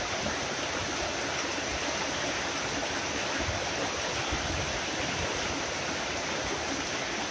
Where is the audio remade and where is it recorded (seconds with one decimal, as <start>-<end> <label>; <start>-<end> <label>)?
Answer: 0.0-7.3 recorded